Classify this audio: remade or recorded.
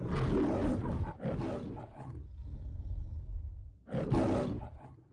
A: recorded